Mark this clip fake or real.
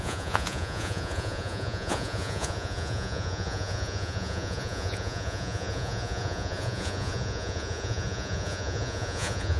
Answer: fake